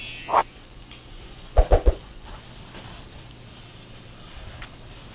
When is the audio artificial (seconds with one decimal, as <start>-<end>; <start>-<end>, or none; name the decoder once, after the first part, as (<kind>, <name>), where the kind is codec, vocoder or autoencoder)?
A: 0.4-2.4 (vocoder, Vocos)